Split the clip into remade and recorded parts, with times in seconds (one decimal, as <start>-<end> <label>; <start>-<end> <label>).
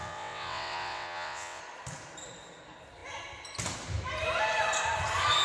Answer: 0.0-1.6 remade; 1.6-5.4 recorded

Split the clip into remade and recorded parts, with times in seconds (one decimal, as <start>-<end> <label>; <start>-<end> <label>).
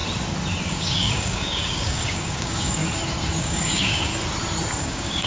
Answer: 0.0-0.7 recorded; 0.7-2.8 remade; 2.8-3.4 recorded; 3.4-4.1 remade; 4.1-4.8 recorded; 4.8-5.3 remade